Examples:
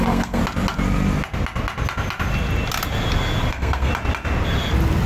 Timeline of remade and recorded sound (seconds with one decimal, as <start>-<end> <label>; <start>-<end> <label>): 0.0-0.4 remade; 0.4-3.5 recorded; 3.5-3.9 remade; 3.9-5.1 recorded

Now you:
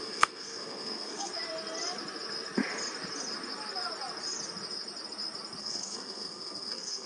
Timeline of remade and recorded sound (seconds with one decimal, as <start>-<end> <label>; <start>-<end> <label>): 0.0-1.3 remade; 1.3-5.6 recorded; 5.6-7.1 remade

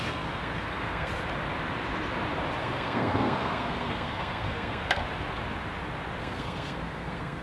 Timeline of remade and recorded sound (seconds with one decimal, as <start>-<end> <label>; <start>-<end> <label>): 0.0-1.1 remade; 1.1-2.6 recorded; 2.6-5.0 remade; 5.0-6.2 recorded; 6.2-7.4 remade

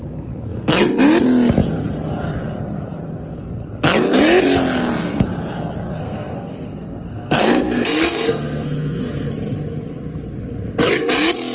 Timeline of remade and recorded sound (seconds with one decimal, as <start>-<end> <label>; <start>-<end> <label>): 0.0-6.0 recorded; 6.0-9.3 remade; 9.3-11.5 recorded